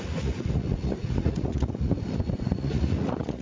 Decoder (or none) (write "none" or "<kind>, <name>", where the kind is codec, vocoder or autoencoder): vocoder, Vocos